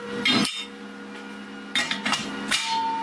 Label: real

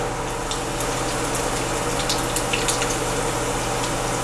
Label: real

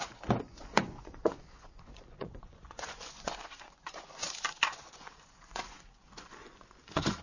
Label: fake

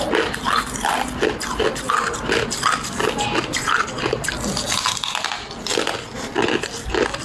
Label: real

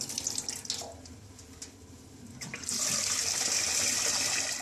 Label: real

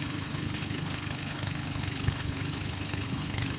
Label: fake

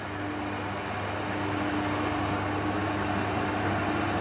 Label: real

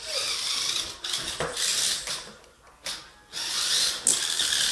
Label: real